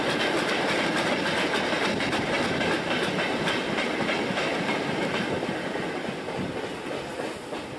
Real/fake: real